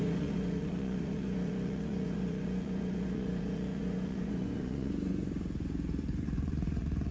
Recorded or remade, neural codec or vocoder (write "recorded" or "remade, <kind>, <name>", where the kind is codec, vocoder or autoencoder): remade, vocoder, Vocos